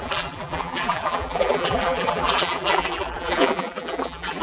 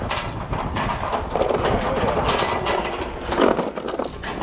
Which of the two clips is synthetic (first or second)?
first